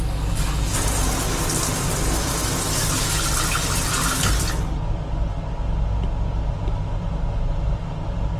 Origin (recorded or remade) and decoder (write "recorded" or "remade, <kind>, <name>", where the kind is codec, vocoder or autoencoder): recorded